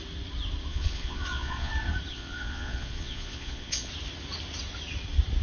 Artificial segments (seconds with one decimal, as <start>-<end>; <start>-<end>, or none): 0.7-1.7; 2.1-3.9